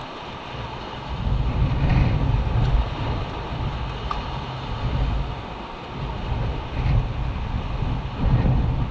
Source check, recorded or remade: recorded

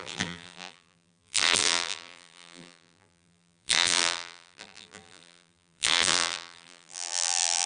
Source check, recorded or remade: remade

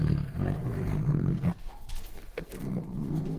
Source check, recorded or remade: remade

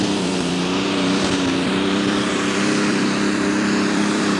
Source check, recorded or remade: remade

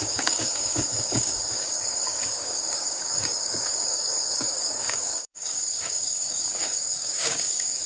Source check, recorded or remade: remade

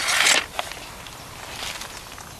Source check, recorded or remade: recorded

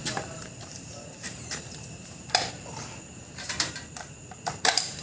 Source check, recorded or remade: remade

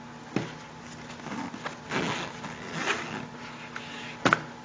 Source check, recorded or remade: recorded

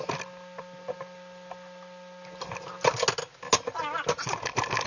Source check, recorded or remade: recorded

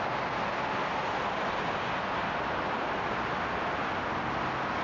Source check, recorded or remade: recorded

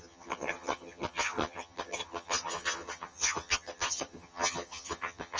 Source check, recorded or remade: remade